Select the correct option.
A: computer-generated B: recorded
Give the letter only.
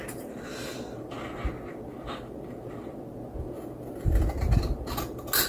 B